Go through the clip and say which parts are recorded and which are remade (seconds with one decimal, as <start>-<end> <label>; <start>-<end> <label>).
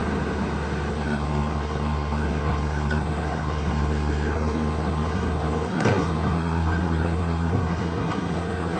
0.0-0.9 recorded; 0.9-8.8 remade